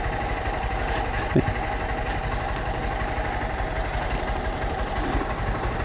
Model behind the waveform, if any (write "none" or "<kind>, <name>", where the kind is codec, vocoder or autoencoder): none